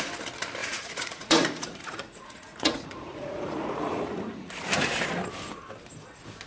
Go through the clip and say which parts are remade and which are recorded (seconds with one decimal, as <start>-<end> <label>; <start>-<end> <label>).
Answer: 0.0-0.6 recorded; 0.6-4.5 remade; 4.5-6.5 recorded